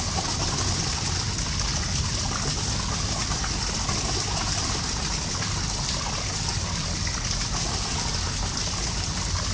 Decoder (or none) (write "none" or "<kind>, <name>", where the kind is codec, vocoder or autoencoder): none